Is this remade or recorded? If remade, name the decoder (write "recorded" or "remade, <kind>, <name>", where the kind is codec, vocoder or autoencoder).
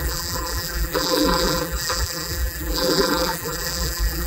remade, vocoder, BigVGAN v2